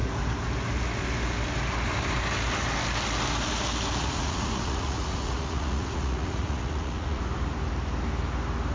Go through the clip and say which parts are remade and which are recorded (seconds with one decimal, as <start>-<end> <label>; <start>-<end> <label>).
0.0-4.0 recorded; 4.0-7.2 remade; 7.2-8.7 recorded